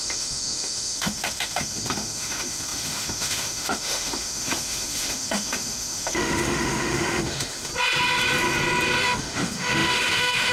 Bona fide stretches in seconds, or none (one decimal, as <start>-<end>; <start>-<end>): 7.7-9.0